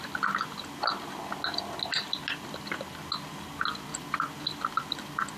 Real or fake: real